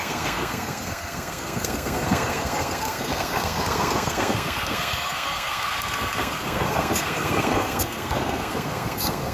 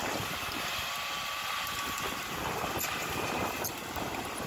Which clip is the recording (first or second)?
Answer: second